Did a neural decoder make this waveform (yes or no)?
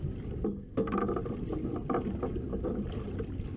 no